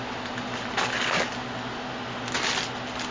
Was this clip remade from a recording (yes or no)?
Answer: no